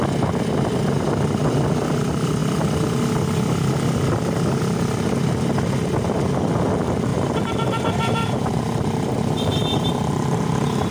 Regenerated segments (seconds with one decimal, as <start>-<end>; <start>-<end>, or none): 7.1-10.9